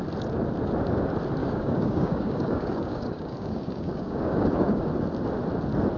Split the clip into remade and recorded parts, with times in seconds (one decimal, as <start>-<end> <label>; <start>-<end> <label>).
0.0-1.4 recorded; 1.4-4.9 remade; 4.9-6.0 recorded